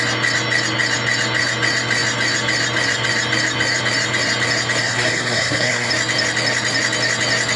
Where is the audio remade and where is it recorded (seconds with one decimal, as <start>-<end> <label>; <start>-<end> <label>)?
0.0-4.8 recorded; 4.8-5.9 remade; 5.9-7.6 recorded